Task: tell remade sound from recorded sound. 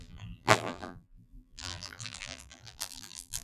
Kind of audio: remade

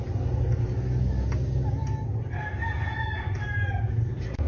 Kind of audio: recorded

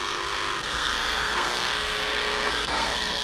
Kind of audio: remade